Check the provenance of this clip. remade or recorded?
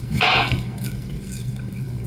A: remade